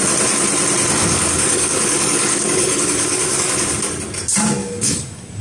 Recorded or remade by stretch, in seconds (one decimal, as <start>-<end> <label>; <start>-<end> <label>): 0.0-1.0 recorded; 1.0-3.7 remade; 3.7-4.6 recorded; 4.6-5.4 remade